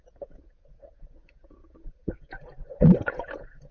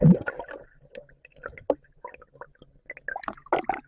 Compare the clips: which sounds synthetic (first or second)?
first